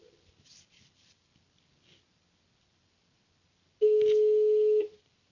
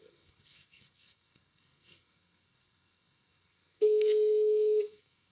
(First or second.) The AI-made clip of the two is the second